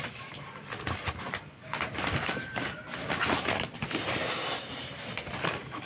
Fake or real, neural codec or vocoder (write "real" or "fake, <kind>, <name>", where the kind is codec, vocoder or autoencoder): real